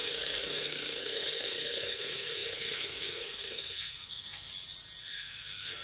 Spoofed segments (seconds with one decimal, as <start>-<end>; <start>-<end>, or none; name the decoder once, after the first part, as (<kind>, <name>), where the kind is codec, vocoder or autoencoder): 0.0-4.5 (codec, SNAC); 5.0-5.8